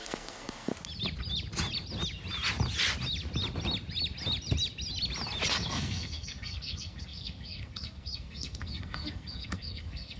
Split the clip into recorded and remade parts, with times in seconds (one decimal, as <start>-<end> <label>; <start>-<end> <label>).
0.0-0.7 remade; 0.7-5.5 recorded; 5.5-10.2 remade